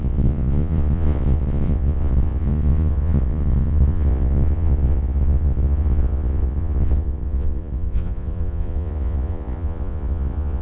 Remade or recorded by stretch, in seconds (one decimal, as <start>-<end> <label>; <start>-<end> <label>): 0.0-10.6 remade